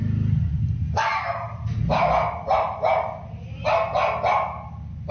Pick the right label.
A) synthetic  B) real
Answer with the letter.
B